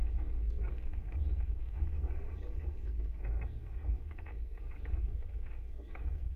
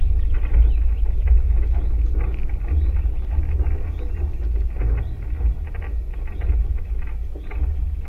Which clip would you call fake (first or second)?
first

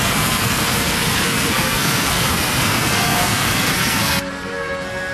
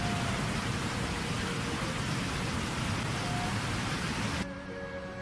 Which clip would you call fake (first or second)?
first